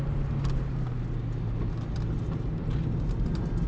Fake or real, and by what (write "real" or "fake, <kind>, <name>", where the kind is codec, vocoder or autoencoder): real